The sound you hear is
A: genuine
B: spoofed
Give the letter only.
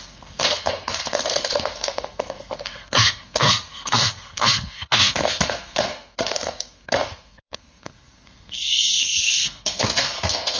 B